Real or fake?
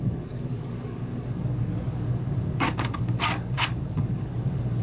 fake